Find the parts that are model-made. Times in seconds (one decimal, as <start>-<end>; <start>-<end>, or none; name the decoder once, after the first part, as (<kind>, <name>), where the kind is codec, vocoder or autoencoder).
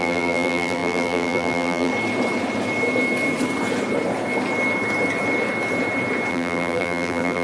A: 0.0-1.9 (vocoder, BigVGAN v2); 6.3-7.4